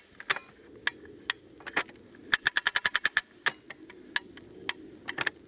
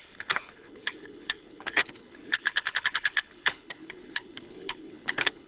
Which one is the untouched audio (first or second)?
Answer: first